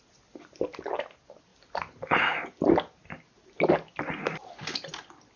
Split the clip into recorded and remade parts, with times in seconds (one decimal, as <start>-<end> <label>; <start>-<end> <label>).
0.0-5.4 recorded

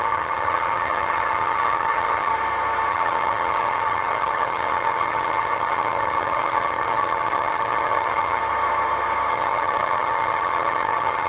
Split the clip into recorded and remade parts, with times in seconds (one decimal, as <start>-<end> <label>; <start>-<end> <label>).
0.0-2.3 remade; 2.3-2.9 recorded; 2.9-8.4 remade; 8.4-9.3 recorded; 9.3-11.3 remade

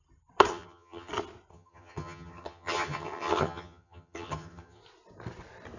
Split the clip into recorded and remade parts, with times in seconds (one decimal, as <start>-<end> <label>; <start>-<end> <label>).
0.0-0.5 recorded; 0.5-1.1 remade; 1.1-1.5 recorded; 1.5-4.8 remade; 4.8-5.8 recorded

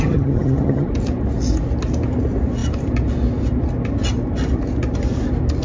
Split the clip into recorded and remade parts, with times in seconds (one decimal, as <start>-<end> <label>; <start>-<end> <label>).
0.0-0.9 remade; 0.9-5.6 recorded

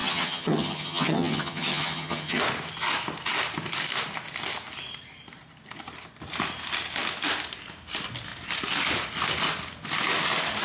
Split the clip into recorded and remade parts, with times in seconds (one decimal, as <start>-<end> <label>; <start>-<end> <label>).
0.0-2.4 remade; 2.4-10.6 recorded